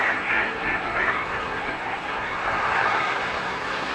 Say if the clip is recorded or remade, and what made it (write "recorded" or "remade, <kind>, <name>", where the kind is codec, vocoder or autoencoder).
remade, codec, SNAC